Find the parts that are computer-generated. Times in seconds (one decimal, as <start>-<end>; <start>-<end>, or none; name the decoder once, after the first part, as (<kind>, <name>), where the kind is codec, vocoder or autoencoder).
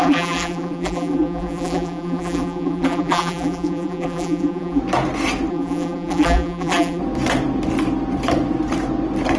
0.0-4.8 (vocoder, BigVGAN v2); 5.5-7.0